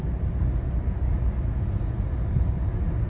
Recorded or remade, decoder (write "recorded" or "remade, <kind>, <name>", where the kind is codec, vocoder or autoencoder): recorded